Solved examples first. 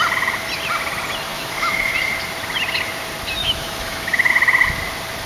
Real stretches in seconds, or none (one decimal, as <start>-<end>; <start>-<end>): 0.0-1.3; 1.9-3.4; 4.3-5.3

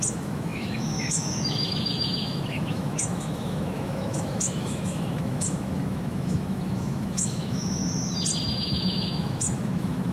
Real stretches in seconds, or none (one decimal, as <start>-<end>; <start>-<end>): 7.8-8.5

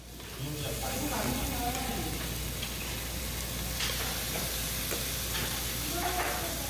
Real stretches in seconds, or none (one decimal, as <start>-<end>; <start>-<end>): 0.0-6.7

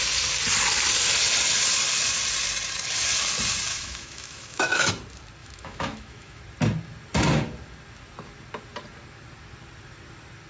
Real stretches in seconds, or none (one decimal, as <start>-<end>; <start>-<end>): 0.0-3.7; 4.9-5.4; 6.4-10.5

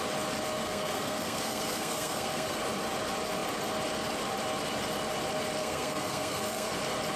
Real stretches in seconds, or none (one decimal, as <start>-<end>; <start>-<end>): 0.0-0.6; 2.6-5.6; 6.7-7.2

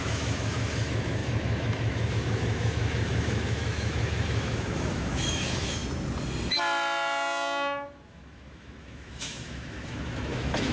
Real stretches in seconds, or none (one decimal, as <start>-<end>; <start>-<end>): 5.8-8.1